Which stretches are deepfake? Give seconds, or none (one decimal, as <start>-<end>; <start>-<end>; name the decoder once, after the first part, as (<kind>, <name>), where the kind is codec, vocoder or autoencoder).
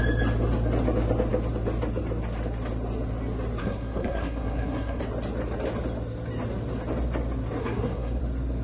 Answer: 3.6-5.0 (codec, SNAC); 7.6-8.2